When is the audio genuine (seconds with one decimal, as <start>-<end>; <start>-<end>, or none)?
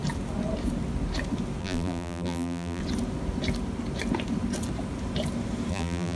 0.0-1.6; 2.8-5.7